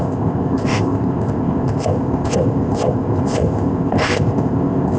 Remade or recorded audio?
remade